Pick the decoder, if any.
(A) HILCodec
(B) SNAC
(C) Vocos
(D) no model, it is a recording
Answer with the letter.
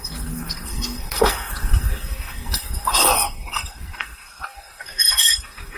B